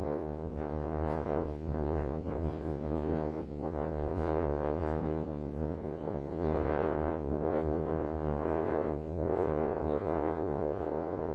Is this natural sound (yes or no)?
no